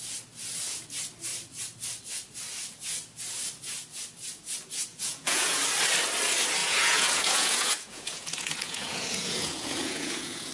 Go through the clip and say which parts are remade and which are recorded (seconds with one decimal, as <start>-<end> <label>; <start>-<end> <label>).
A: 0.0-4.9 recorded; 4.9-5.6 remade; 5.6-6.6 recorded; 6.6-10.5 remade